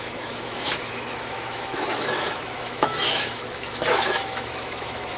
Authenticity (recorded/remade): remade